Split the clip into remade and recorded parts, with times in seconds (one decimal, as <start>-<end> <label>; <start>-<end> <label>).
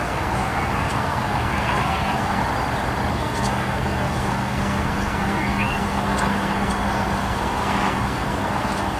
0.0-2.4 remade; 2.4-3.1 recorded; 3.1-9.0 remade